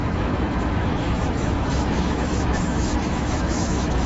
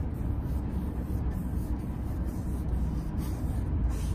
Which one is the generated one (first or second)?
first